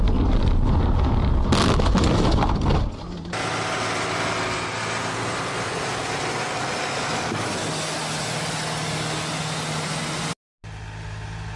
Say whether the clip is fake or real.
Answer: real